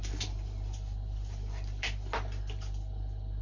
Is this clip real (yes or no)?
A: yes